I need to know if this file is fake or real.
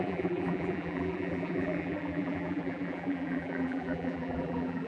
fake